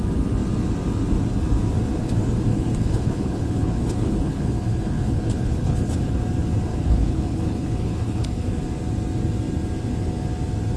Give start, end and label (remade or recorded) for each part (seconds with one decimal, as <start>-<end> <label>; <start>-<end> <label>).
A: 0.0-2.5 recorded; 2.5-6.2 remade; 6.2-6.7 recorded; 6.7-8.6 remade; 8.6-10.8 recorded